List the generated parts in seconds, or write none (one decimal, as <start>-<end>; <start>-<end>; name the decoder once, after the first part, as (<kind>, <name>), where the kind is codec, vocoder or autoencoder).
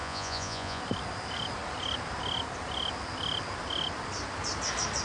0.0-0.8 (vocoder, Vocos)